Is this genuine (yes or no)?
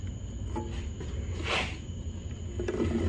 yes